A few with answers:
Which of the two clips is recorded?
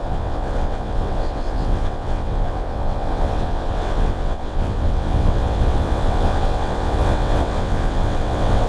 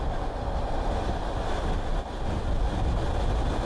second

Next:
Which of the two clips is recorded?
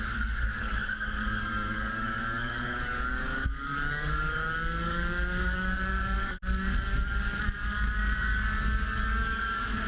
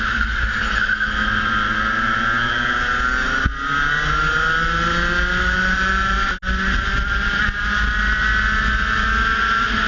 second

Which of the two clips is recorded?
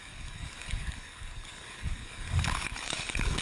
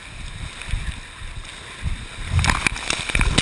second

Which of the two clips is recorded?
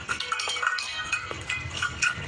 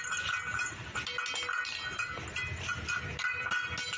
second